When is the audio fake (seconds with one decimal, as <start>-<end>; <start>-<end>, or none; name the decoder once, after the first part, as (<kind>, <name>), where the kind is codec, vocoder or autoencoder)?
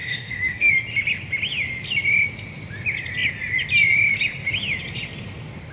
0.0-0.7 (autoencoder, DAC-VAE)